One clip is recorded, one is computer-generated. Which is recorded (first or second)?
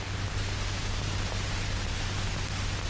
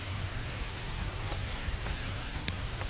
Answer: first